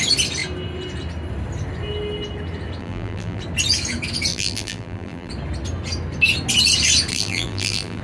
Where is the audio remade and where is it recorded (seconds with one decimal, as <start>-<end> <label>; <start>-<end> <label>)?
0.0-2.8 recorded; 2.8-3.4 remade; 3.4-4.3 recorded; 4.3-5.3 remade; 5.3-7.1 recorded; 7.1-8.0 remade